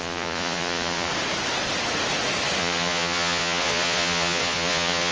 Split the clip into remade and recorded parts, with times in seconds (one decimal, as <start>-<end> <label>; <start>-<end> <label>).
0.0-1.1 remade; 1.1-2.6 recorded; 2.6-5.1 remade